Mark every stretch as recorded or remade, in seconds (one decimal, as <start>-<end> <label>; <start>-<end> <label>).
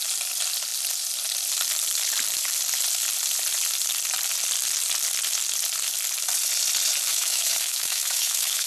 0.0-7.1 recorded; 7.1-8.7 remade